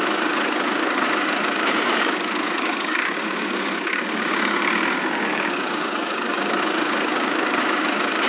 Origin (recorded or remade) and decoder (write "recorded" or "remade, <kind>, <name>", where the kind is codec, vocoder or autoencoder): remade, codec, DAC